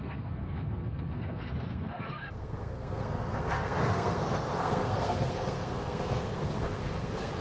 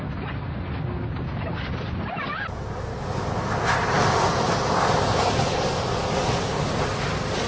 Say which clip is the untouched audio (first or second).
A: second